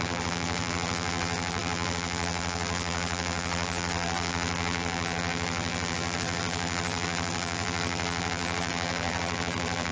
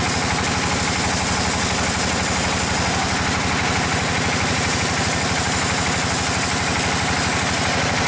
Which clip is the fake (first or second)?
first